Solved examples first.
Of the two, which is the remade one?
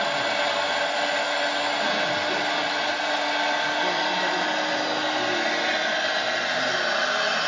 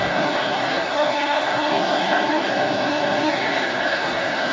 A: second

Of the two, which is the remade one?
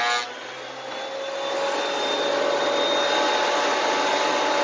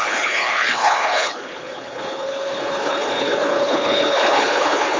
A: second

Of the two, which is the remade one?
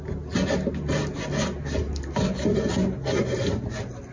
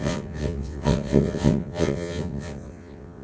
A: second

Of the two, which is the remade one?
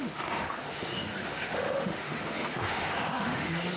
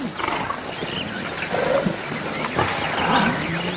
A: first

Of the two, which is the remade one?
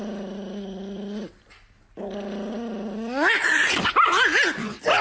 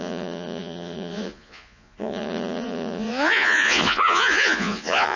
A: second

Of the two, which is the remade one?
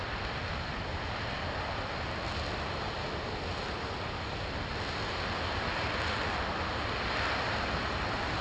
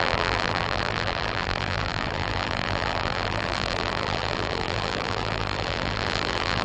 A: second